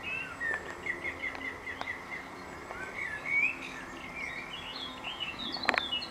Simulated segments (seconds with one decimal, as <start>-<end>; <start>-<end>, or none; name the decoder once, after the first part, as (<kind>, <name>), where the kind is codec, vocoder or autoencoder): 4.7-5.4 (vocoder, Vocos)